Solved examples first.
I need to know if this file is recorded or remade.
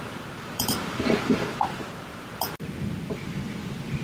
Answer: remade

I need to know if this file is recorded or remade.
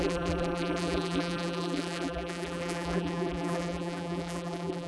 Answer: remade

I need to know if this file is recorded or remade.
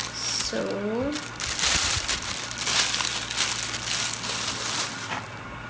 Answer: recorded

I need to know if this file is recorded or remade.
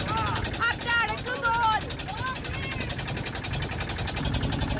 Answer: recorded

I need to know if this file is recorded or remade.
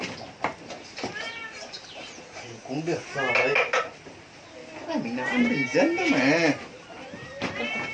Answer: recorded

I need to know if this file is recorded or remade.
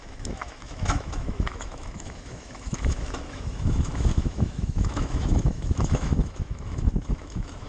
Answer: remade